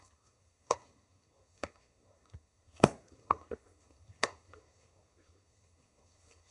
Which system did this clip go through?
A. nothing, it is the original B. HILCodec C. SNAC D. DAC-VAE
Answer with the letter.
C